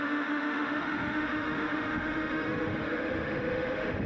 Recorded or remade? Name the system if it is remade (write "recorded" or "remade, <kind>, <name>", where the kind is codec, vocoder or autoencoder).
remade, autoencoder, DAC-VAE